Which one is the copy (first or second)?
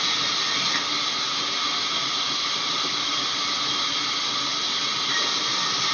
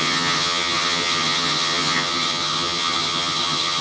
second